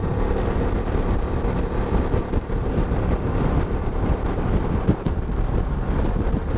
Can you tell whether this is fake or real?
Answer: real